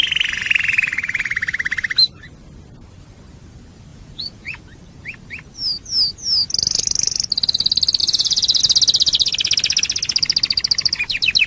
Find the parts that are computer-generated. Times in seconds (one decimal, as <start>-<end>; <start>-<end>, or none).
3.9-4.6; 8.0-8.6